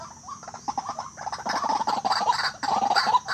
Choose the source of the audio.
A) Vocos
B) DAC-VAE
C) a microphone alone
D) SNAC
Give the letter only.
C